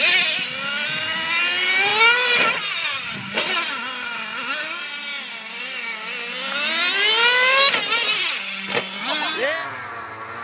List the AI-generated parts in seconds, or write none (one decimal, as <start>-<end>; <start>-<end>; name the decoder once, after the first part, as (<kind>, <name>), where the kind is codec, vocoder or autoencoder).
none